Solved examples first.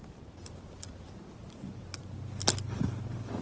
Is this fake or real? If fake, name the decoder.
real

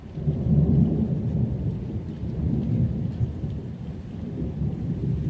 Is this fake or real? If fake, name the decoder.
fake, vocoder, BigVGAN v2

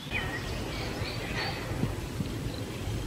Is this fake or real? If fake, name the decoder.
real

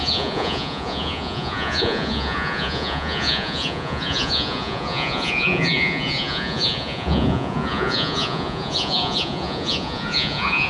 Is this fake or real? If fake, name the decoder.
fake, vocoder, Vocos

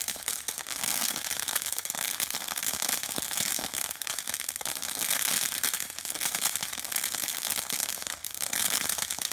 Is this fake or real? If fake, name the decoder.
fake, codec, SNAC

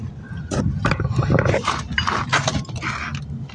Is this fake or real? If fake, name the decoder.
real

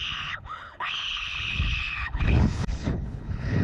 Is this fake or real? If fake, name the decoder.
fake, codec, HILCodec